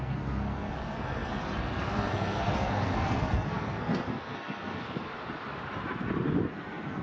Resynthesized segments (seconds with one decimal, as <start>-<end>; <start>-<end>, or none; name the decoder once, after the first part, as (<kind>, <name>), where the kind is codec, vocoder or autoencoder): 0.0-5.1 (codec, SNAC); 6.5-7.0